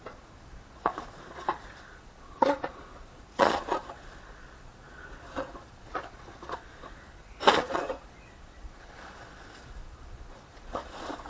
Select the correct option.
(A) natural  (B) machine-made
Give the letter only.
B